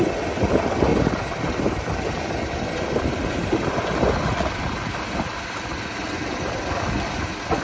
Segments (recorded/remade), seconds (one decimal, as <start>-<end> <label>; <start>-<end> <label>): 0.0-0.9 recorded; 0.9-4.1 remade; 4.1-7.6 recorded